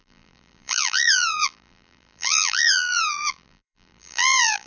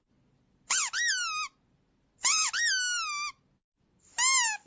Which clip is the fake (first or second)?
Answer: first